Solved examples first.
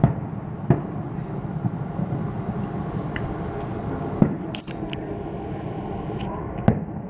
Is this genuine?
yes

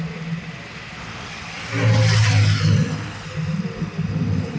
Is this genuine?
yes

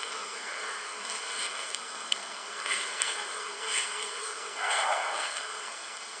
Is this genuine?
no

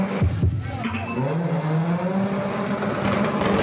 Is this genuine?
yes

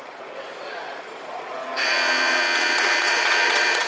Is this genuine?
no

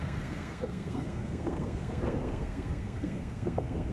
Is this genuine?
no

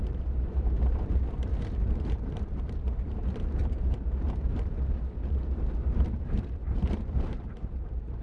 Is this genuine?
no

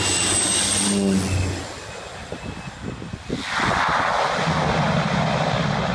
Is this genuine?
yes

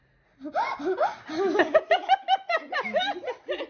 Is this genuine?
yes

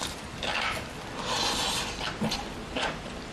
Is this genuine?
yes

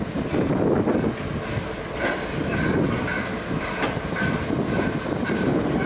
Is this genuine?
yes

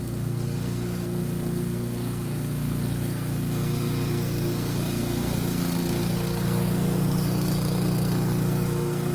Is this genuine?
no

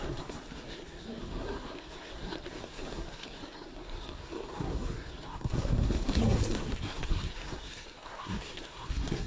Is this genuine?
no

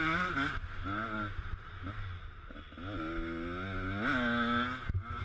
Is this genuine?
yes